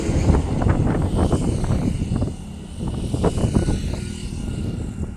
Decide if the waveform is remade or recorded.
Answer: recorded